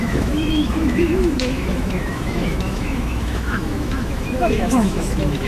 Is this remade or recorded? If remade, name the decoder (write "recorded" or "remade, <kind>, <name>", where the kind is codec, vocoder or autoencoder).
remade, autoencoder, DAC-VAE